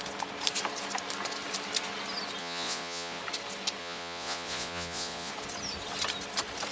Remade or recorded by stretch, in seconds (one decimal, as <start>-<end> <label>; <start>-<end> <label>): 0.0-2.4 recorded; 2.4-3.2 remade; 3.2-3.8 recorded; 3.8-5.3 remade; 5.3-6.7 recorded